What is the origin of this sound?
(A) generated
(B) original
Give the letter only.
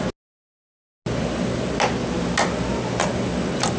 B